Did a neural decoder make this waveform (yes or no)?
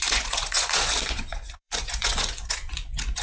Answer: yes